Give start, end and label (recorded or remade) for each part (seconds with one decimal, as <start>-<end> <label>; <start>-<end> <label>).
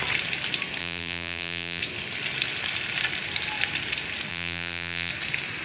0.0-0.8 recorded; 0.8-1.8 remade; 1.8-4.3 recorded; 4.3-5.1 remade; 5.1-5.6 recorded